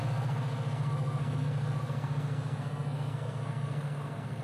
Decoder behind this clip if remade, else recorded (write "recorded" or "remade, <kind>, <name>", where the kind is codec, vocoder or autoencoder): remade, codec, SNAC